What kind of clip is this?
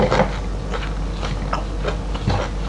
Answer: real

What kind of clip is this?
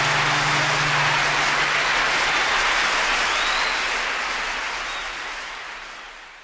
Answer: real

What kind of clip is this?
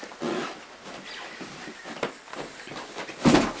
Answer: real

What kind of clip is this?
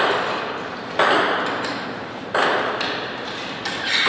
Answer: real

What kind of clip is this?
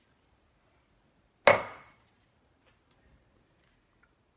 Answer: real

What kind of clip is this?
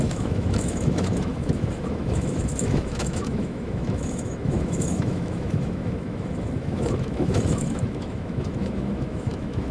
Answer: fake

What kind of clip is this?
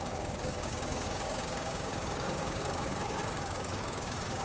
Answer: fake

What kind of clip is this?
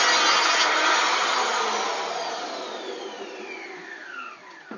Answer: real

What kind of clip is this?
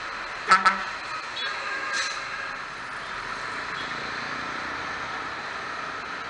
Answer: real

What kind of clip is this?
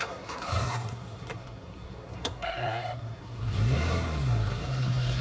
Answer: fake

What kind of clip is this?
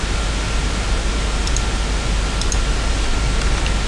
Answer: real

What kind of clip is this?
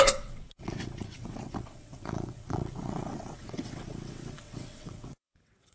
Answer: fake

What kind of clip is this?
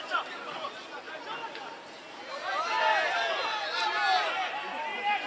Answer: real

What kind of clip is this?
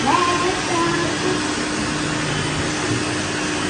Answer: real